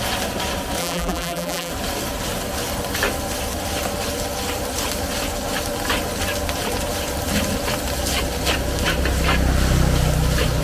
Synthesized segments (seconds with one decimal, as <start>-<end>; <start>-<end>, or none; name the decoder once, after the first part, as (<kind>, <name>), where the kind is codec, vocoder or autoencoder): 0.8-1.7 (vocoder, BigVGAN v2)

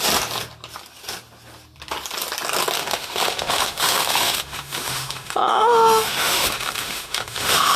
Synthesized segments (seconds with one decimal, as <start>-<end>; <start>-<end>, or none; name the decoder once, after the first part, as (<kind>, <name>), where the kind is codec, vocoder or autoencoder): 2.8-7.8 (autoencoder, DAC-VAE)

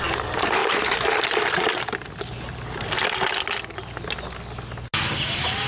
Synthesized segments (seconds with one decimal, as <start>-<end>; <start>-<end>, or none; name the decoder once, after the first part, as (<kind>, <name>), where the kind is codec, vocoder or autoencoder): 0.6-1.6 (vocoder, BigVGAN v2)

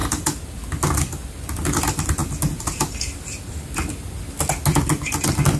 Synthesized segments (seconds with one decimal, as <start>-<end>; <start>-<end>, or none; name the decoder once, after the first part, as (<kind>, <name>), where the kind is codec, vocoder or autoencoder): none

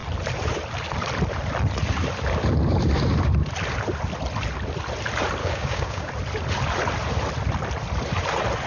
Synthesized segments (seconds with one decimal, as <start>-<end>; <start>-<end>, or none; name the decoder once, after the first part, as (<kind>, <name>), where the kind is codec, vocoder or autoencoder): 5.4-6.1 (codec, DAC)

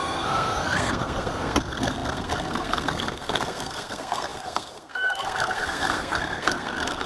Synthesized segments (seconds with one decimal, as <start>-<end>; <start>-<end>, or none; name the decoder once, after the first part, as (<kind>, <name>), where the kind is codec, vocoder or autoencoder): 0.0-7.1 (codec, SNAC)

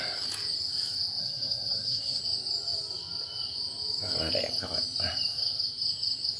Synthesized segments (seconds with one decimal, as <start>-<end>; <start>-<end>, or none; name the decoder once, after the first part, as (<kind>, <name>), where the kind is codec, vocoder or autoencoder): 1.2-2.2 (codec, SNAC)